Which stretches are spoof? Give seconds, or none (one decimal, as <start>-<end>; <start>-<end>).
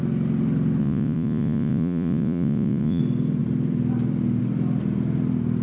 0.8-3.0